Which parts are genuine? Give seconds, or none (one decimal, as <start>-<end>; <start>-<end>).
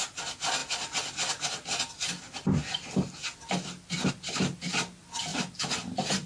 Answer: 0.0-6.3